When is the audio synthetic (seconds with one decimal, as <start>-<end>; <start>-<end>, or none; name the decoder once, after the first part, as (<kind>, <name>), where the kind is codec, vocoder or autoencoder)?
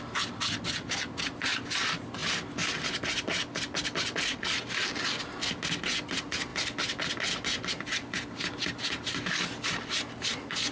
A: none